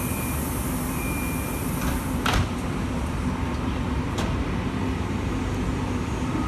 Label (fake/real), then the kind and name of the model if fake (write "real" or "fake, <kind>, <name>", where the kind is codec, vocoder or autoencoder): real